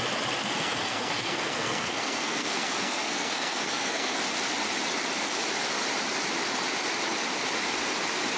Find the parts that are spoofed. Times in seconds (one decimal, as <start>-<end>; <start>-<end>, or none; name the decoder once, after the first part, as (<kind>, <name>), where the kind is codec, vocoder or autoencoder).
0.4-4.2 (codec, SNAC)